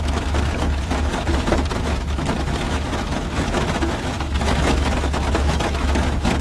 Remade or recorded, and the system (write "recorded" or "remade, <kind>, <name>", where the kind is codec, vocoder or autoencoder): remade, autoencoder, DAC-VAE